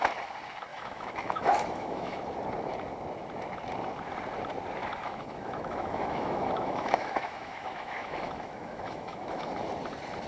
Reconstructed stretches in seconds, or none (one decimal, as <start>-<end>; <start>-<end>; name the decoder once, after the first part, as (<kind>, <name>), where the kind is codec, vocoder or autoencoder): 0.7-2.2 (autoencoder, DAC-VAE); 4.8-9.5

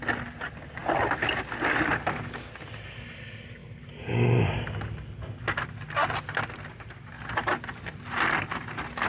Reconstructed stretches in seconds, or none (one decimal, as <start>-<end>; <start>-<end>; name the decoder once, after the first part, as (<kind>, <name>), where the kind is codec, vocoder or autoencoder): none

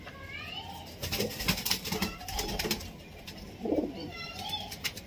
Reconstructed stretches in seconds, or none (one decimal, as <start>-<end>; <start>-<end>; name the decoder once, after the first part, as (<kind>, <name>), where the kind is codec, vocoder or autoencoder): 0.0-1.0 (vocoder, BigVGAN v2); 4.1-5.1